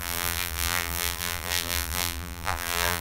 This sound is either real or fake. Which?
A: fake